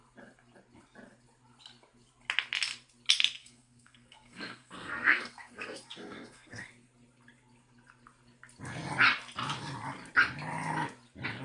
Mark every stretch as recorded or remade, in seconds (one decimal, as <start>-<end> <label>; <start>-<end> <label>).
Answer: 0.0-3.4 recorded; 3.4-6.7 remade; 6.7-11.4 recorded

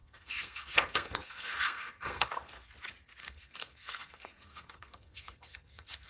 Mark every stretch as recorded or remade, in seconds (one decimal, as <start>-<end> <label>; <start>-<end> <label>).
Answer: 0.0-2.7 remade; 2.7-3.2 recorded; 3.2-6.1 remade

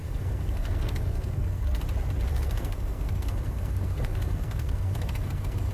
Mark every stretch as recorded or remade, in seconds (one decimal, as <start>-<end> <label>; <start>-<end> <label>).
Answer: 0.0-1.8 remade; 1.8-2.3 recorded; 2.3-5.7 remade

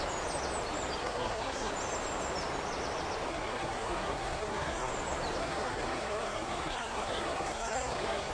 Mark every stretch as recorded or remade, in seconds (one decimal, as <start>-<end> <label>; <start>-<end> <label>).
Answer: 0.0-1.0 recorded; 1.0-1.7 remade; 1.7-3.3 recorded; 3.3-4.9 remade; 4.9-5.4 recorded; 5.4-8.3 remade

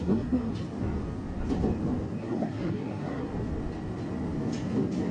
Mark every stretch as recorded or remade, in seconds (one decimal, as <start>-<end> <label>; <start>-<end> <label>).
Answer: 0.0-0.5 remade; 0.5-2.2 recorded; 2.2-3.3 remade; 3.3-5.1 recorded